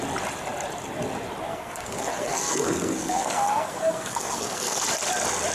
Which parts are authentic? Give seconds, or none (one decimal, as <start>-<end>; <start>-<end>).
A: 0.0-1.5; 4.8-5.5